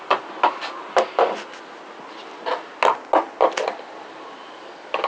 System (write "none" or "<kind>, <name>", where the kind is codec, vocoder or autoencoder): none